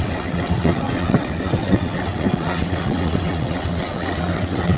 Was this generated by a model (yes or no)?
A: yes